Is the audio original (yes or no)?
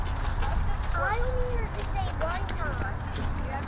yes